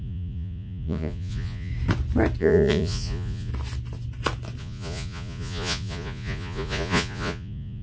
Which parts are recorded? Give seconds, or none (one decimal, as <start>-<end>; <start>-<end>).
1.7-2.4; 3.5-4.6